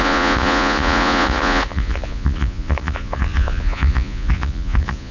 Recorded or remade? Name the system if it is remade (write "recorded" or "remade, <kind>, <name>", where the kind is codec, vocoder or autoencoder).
remade, vocoder, Vocos